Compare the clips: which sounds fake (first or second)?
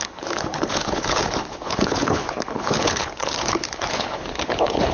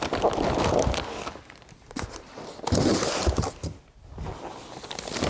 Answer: first